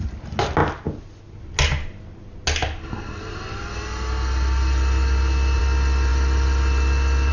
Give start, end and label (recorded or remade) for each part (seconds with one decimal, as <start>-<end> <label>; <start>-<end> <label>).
0.0-7.3 recorded